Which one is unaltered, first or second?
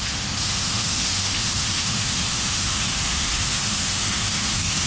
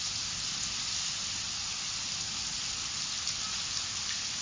second